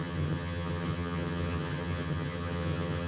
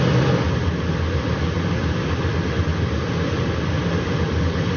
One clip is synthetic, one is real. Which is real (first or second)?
second